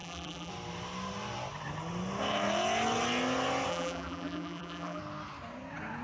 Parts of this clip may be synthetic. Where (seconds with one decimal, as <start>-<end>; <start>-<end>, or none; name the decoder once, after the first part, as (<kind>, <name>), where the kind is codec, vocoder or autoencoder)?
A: 0.0-0.5 (vocoder, BigVGAN v2); 3.7-5.0